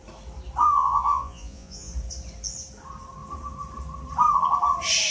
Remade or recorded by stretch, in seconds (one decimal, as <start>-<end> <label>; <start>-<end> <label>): 0.0-0.6 recorded; 0.6-1.9 remade; 1.9-5.1 recorded